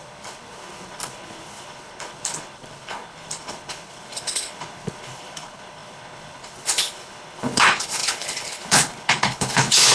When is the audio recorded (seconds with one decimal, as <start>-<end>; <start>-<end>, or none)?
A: none